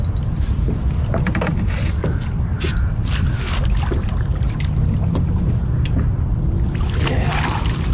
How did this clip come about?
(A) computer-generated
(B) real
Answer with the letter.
B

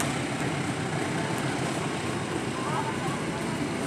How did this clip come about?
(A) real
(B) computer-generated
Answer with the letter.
A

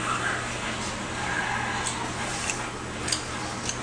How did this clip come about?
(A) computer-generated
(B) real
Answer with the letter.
B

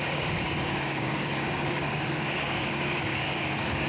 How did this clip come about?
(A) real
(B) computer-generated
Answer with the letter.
B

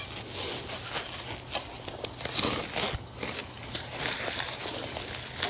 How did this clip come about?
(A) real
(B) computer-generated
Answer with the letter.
A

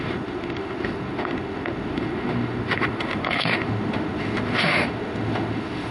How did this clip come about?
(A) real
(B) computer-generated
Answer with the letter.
B